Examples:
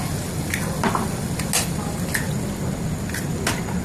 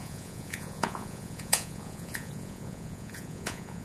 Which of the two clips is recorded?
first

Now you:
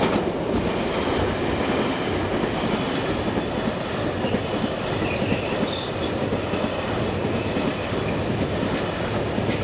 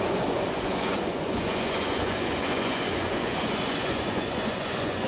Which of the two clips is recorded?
first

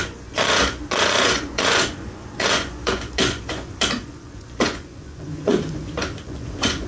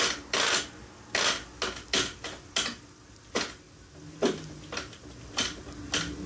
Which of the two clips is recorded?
second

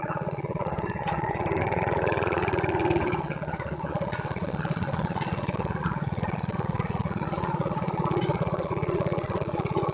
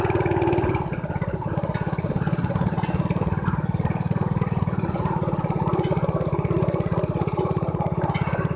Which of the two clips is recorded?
second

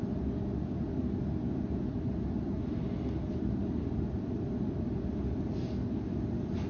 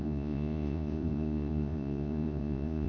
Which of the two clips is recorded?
first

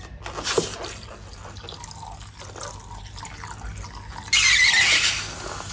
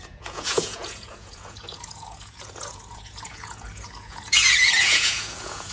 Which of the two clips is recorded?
first